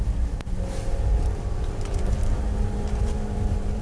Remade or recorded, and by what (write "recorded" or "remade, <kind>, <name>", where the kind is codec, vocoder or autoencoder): remade, vocoder, BigVGAN v2